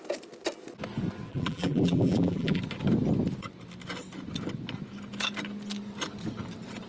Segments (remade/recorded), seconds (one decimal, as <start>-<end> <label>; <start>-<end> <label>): 0.0-1.3 recorded; 1.3-2.6 remade; 2.6-6.9 recorded

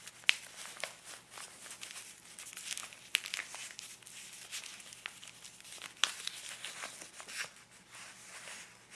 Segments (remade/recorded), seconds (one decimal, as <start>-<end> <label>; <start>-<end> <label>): 0.0-8.9 recorded

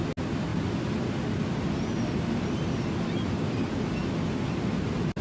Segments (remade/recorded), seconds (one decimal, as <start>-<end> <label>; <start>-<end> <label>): 0.0-5.2 recorded

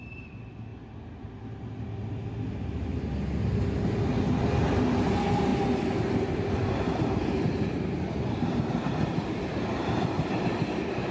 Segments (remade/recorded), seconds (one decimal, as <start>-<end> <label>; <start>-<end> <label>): 0.0-0.7 remade; 0.7-4.0 recorded; 4.0-11.1 remade